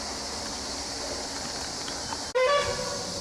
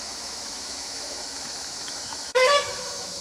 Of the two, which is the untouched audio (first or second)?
first